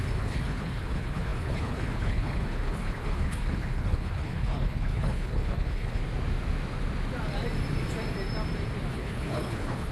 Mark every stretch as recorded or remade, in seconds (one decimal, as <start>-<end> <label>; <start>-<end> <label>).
0.0-6.0 remade; 6.0-8.9 recorded; 8.9-9.9 remade